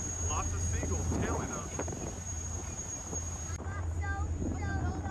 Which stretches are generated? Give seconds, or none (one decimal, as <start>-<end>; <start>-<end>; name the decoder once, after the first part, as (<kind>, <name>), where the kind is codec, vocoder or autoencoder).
0.7-3.8 (vocoder, BigVGAN v2)